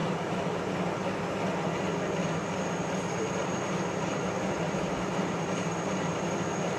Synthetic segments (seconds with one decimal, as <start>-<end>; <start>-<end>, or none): 0.0-0.7; 3.4-6.2